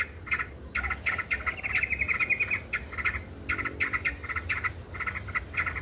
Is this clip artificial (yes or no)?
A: no